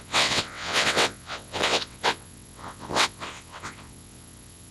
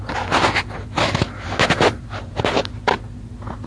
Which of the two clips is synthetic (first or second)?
first